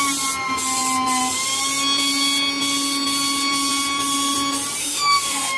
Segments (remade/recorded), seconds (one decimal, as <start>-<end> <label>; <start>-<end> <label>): 0.0-4.8 recorded; 4.8-5.6 remade